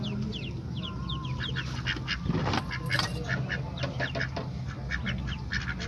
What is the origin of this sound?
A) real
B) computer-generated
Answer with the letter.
A